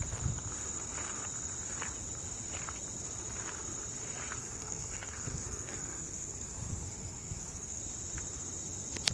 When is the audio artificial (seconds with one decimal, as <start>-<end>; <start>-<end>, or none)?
4.4-7.8